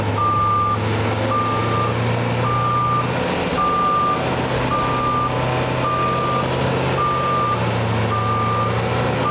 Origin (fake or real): real